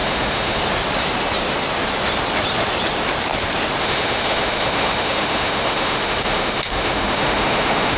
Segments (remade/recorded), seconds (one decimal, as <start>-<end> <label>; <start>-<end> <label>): 0.0-0.6 remade; 0.6-3.8 recorded; 3.8-8.0 remade